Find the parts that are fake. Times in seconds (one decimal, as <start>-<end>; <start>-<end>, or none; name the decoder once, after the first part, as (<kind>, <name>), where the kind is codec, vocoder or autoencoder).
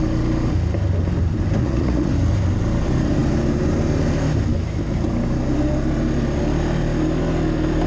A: 1.6-2.1 (vocoder, Vocos)